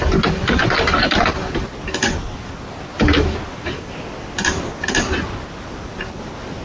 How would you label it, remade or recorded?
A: recorded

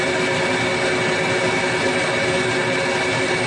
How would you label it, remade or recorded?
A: recorded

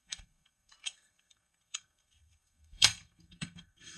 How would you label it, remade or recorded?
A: remade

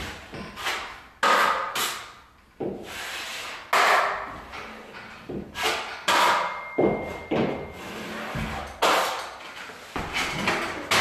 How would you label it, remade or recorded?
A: recorded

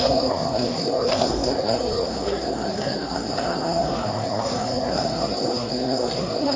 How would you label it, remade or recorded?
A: remade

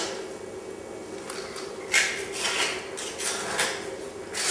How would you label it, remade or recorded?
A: recorded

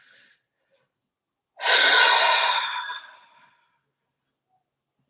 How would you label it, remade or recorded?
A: recorded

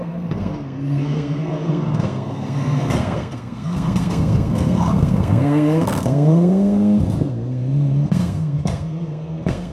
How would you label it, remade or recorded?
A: remade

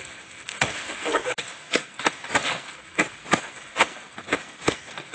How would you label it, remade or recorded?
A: remade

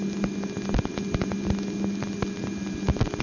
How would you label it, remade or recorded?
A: recorded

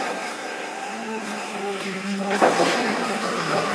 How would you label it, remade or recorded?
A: remade